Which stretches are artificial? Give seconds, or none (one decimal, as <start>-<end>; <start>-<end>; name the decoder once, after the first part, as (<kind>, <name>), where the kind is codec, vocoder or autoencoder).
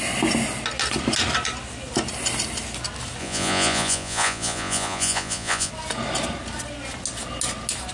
3.2-5.7 (vocoder, Vocos)